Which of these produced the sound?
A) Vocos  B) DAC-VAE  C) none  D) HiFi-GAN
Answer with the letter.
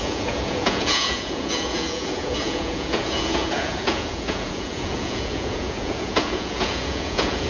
A